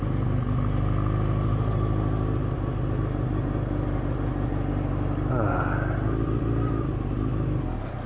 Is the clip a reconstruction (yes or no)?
no